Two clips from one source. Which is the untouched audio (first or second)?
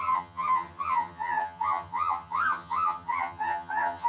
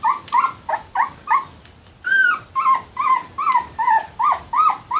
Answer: second